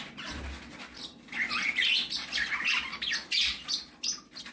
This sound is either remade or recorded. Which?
recorded